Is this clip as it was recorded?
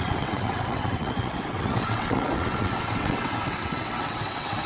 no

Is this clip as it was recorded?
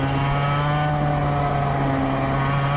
yes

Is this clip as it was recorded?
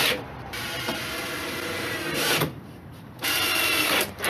no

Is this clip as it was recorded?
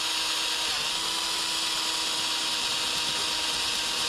yes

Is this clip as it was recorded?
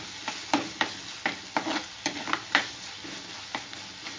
yes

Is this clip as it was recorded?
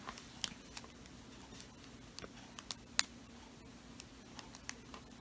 yes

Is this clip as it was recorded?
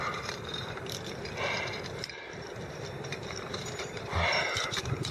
no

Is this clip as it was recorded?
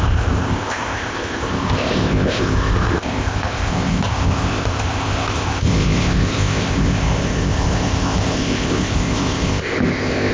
no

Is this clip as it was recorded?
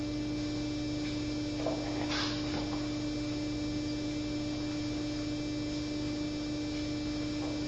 yes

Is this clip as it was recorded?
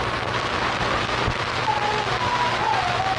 yes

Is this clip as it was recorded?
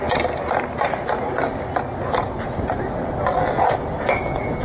yes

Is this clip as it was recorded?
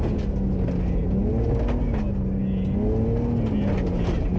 yes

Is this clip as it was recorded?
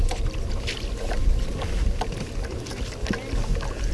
yes